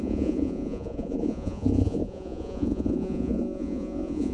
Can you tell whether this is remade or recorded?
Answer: remade